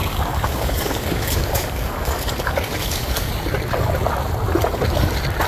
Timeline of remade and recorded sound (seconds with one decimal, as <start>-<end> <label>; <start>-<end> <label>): 0.0-3.3 remade; 3.3-5.5 recorded